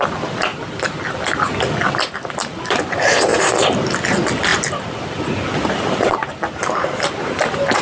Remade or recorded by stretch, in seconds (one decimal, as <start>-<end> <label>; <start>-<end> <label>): 0.0-7.8 recorded